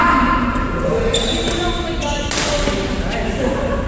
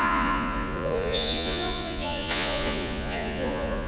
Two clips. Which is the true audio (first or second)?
first